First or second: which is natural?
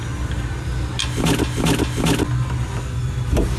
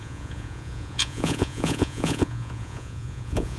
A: first